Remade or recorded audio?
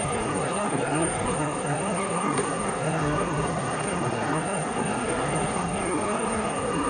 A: remade